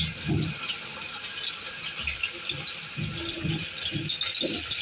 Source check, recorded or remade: recorded